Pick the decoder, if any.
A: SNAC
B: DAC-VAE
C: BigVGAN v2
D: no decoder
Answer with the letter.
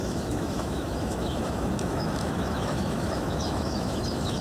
B